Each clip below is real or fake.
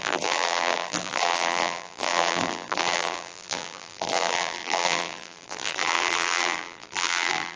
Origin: fake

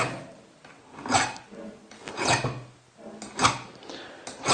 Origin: real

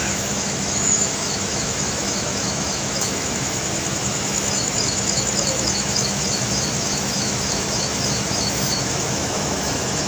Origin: fake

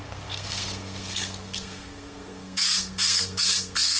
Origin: fake